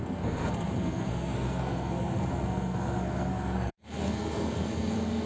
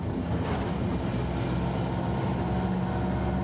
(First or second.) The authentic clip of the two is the second